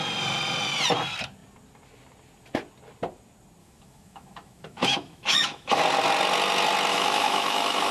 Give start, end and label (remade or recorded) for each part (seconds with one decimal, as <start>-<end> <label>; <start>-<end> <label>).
0.0-3.6 recorded; 3.6-5.8 remade; 5.8-6.9 recorded; 6.9-7.9 remade